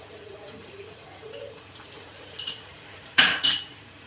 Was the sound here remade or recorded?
remade